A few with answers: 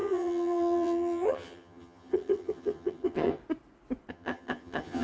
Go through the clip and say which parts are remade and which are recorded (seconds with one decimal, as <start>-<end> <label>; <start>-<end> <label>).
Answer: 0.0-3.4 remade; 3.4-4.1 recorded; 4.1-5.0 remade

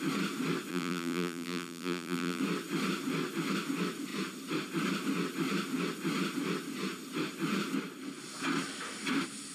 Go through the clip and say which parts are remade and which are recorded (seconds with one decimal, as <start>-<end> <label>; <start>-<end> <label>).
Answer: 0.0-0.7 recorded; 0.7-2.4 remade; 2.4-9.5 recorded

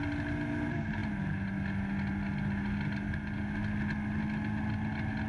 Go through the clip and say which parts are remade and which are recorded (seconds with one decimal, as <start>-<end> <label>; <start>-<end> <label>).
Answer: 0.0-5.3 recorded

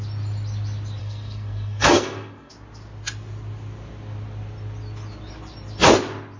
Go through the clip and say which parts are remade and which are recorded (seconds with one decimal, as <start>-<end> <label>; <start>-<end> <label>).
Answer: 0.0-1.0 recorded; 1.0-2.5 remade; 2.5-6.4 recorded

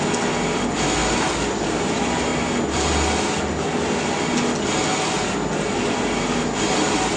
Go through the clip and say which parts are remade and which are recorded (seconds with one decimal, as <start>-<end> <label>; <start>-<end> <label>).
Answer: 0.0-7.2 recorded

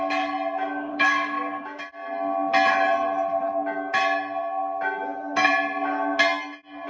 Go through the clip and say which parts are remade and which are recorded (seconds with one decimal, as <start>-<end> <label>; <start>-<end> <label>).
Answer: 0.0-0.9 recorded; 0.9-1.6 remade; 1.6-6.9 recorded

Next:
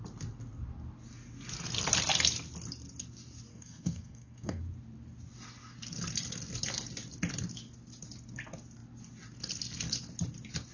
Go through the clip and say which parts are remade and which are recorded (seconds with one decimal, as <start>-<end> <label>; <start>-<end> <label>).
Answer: 0.0-3.5 recorded; 3.5-4.6 remade; 4.6-10.7 recorded

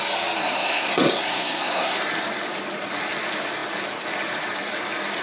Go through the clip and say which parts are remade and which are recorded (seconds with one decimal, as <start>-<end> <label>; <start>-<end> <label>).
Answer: 0.0-0.4 recorded; 0.4-2.0 remade; 2.0-5.2 recorded